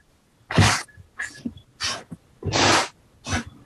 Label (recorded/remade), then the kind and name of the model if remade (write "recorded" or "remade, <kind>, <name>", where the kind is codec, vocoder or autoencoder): recorded